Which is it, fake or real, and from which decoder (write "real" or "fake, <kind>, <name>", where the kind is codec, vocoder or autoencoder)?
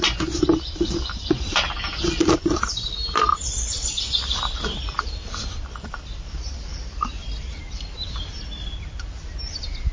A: fake, vocoder, BigVGAN v2